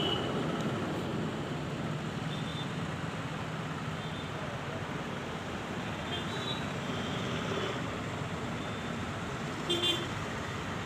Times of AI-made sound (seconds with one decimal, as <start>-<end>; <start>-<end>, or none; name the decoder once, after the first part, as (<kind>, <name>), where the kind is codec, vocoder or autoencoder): none